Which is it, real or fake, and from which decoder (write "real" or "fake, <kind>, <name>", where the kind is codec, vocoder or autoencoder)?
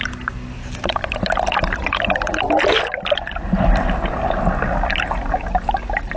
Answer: real